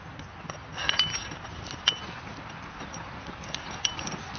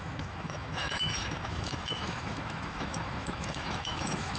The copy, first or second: second